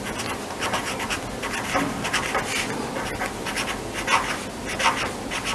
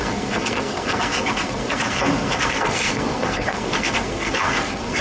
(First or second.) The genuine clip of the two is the first